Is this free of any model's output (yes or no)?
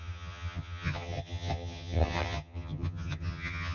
no